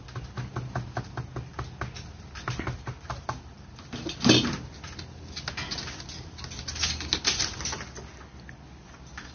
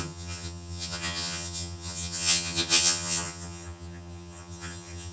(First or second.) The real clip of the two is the first